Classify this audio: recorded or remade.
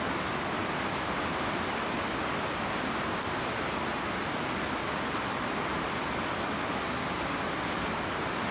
recorded